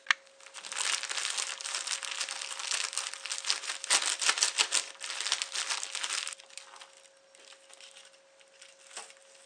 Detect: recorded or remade recorded